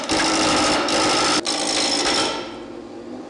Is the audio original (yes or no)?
yes